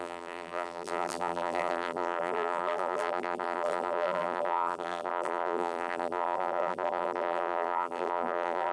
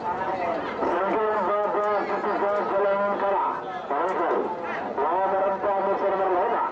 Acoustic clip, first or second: second